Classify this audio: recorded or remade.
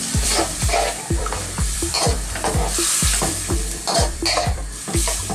remade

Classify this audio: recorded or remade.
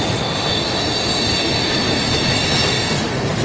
recorded